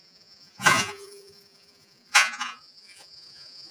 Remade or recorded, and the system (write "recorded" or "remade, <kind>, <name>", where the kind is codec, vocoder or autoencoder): remade, vocoder, Vocos